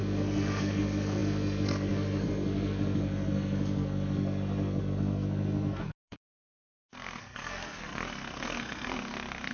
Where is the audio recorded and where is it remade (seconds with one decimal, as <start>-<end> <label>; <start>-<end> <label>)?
0.0-9.5 remade